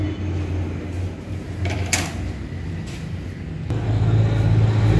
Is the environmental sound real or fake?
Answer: real